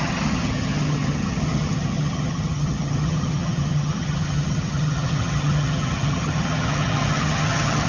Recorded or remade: remade